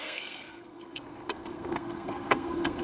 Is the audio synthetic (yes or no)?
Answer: yes